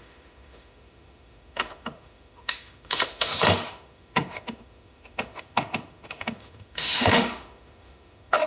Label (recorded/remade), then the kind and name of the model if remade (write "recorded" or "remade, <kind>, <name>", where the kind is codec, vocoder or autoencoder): remade, autoencoder, DAC-VAE